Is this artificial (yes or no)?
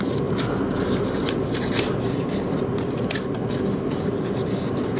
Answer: no